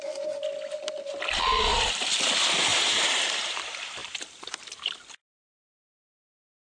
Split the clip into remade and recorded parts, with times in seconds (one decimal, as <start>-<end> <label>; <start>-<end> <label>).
0.0-1.7 recorded; 1.7-2.2 remade; 2.2-2.7 recorded; 2.7-3.6 remade; 3.6-4.0 recorded; 4.0-5.0 remade; 5.0-6.6 recorded